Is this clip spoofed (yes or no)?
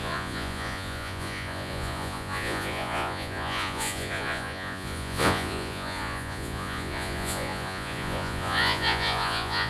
yes